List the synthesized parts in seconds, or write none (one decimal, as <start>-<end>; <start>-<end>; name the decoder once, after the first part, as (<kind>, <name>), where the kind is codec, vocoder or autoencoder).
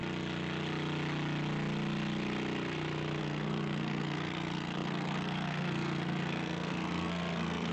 3.2-7.7 (codec, SNAC)